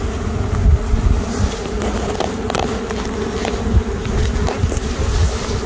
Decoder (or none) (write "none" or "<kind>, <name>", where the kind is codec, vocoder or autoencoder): none